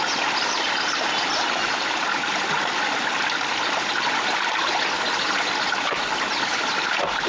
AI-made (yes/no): no